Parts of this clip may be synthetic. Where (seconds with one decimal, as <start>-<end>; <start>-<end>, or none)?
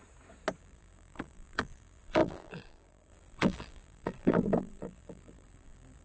0.6-6.0